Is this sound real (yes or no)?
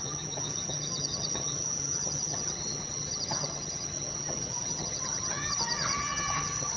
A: no